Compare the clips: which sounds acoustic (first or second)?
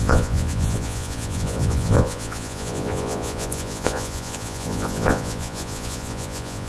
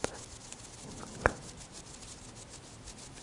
second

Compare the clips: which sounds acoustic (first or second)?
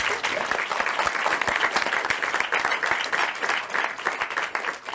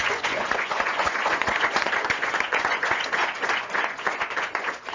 first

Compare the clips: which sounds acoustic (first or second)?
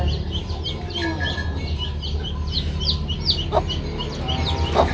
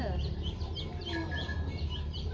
first